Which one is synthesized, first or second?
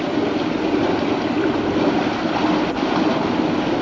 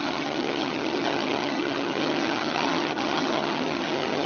second